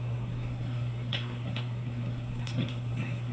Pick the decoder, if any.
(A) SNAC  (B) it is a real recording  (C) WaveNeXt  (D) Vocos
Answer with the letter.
A